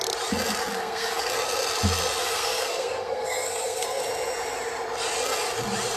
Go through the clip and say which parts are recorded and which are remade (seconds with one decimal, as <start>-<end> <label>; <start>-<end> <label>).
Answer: 0.0-0.7 recorded; 0.7-1.2 remade; 1.2-2.2 recorded; 2.2-4.0 remade; 4.0-6.0 recorded